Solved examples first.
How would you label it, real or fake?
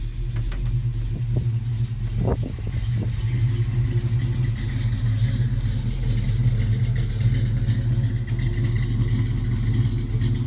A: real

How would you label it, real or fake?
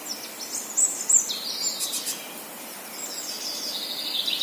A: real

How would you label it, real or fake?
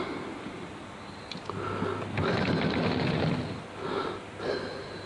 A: real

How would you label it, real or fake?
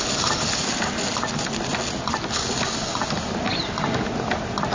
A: real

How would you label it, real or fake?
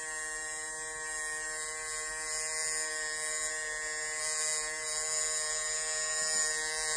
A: real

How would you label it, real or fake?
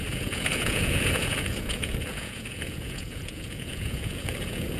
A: fake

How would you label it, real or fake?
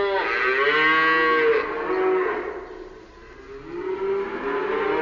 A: real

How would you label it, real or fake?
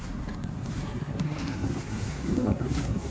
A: fake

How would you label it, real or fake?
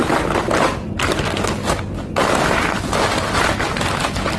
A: real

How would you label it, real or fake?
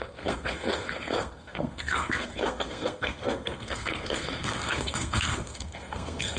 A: fake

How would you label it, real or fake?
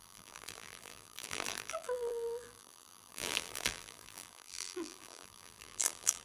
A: fake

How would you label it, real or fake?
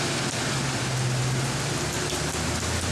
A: real